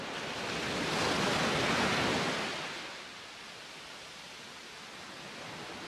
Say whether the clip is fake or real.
real